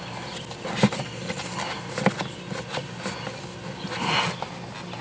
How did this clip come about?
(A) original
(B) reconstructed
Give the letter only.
A